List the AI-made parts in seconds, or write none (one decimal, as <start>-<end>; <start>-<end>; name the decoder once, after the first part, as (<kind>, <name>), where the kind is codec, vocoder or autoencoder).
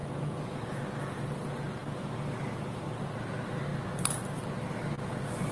0.0-0.8 (vocoder, Vocos)